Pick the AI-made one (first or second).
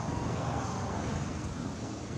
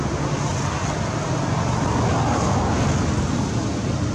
first